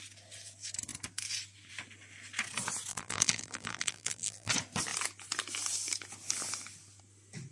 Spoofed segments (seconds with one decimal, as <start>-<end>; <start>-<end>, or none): 2.9-4.5